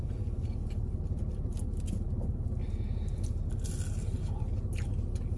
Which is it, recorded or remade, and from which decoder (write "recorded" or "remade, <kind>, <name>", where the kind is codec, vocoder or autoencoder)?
recorded